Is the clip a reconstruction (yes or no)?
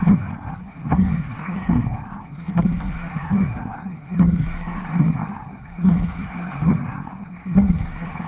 yes